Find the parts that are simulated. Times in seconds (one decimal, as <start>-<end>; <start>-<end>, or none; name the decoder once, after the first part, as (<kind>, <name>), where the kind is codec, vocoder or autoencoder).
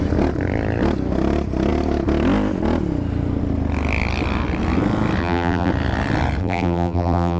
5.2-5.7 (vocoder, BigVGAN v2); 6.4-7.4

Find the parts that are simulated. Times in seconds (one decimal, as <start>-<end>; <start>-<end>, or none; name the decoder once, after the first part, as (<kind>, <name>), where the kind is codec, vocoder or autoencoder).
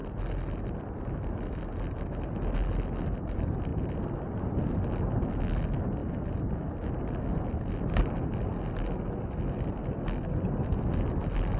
0.0-1.6 (vocoder, BigVGAN v2); 3.7-4.6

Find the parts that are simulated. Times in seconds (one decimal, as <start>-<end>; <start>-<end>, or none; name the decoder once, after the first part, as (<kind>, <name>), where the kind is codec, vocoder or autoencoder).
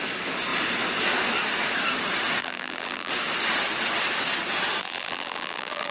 2.4-3.1 (vocoder, BigVGAN v2); 4.8-5.9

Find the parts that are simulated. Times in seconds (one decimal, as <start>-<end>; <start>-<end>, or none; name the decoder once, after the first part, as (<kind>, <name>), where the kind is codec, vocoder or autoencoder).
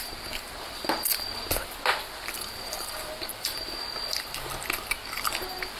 1.3-4.6 (vocoder, BigVGAN v2)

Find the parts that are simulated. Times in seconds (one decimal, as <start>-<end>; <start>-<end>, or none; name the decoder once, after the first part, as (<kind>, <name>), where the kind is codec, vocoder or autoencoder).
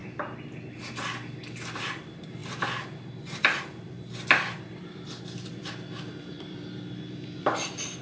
1.8-4.8 (vocoder, BigVGAN v2); 5.5-8.0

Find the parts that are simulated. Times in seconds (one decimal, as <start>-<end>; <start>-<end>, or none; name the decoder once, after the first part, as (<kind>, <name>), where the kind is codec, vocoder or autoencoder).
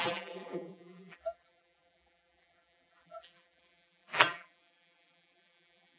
0.0-6.0 (vocoder, BigVGAN v2)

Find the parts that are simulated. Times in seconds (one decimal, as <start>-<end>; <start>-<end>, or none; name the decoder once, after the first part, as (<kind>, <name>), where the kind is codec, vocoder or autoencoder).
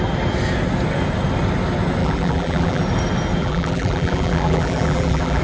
2.0-2.8 (vocoder, BigVGAN v2); 3.4-5.4